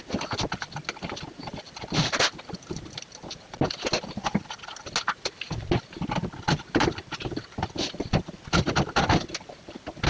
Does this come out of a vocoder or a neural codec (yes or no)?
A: no